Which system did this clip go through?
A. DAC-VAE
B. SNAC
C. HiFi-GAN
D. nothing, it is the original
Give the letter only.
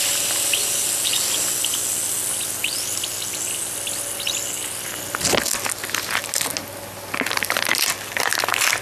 D